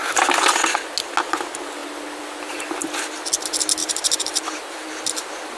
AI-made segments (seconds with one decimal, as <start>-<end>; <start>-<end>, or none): 3.8-5.0